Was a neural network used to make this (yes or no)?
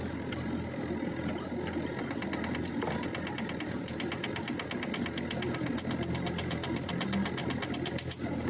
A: no